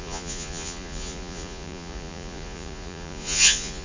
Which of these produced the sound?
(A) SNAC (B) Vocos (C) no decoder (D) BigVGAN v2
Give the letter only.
B